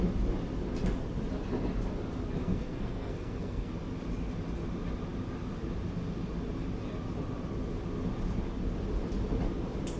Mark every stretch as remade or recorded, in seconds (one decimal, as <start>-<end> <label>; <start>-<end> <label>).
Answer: 0.0-2.4 recorded; 2.4-3.7 remade; 3.7-10.0 recorded